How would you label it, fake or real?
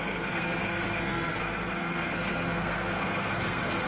fake